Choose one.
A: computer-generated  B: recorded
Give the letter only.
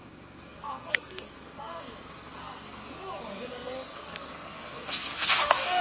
A